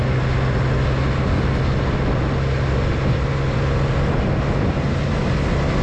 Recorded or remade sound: recorded